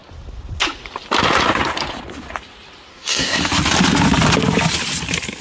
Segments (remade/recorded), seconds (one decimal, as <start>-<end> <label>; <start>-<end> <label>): 0.0-2.9 recorded; 2.9-3.4 remade; 3.4-5.4 recorded